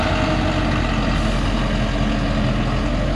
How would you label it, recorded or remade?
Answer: recorded